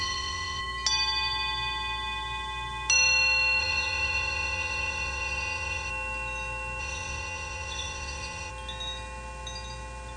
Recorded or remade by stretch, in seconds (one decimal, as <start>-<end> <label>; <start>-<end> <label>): 0.0-0.6 remade; 0.6-3.6 recorded; 3.6-5.9 remade; 5.9-6.8 recorded; 6.8-8.5 remade; 8.5-10.2 recorded